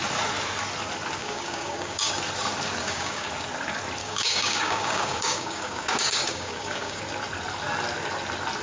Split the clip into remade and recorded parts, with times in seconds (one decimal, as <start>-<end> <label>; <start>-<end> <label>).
0.0-1.2 recorded; 1.2-2.1 remade; 2.1-2.8 recorded; 2.8-3.3 remade; 3.3-4.0 recorded; 4.0-7.0 remade; 7.0-8.6 recorded